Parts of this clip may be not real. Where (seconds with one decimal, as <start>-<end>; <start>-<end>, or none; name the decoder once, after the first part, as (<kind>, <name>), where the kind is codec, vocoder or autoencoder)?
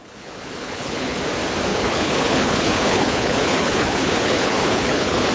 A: 0.0-1.2 (codec, HILCodec); 1.7-5.3